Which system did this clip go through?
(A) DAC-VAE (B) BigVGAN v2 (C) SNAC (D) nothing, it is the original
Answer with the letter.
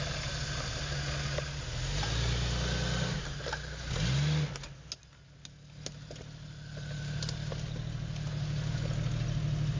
D